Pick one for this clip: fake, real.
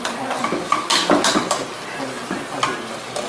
real